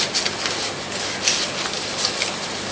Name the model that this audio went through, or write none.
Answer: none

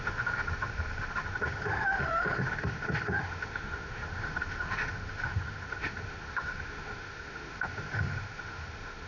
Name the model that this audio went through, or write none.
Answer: autoencoder, DAC-VAE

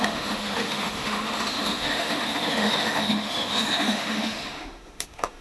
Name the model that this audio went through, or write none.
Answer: autoencoder, DAC-VAE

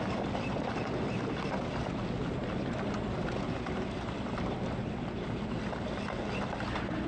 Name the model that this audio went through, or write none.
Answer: none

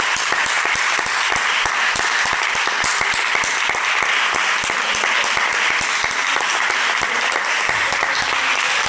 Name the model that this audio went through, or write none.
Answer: none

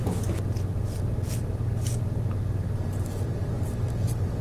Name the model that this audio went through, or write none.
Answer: none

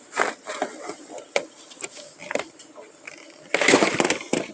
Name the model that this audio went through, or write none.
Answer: none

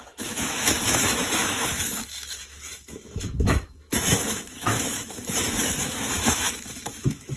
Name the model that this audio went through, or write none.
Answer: autoencoder, DAC-VAE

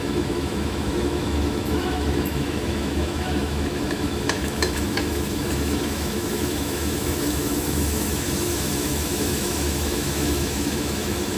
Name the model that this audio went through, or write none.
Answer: autoencoder, DAC-VAE